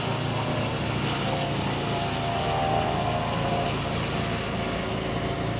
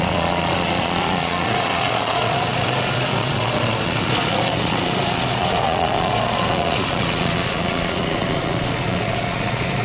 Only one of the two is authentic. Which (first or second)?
first